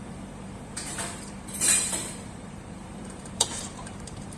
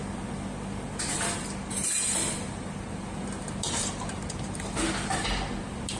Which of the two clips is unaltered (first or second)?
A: second